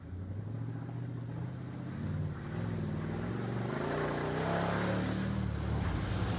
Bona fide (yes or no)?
yes